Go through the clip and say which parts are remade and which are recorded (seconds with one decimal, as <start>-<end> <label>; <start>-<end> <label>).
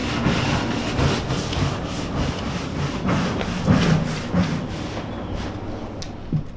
0.0-6.6 recorded